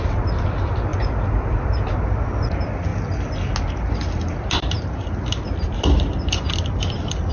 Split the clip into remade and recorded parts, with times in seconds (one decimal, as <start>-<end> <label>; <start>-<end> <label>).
0.0-7.3 recorded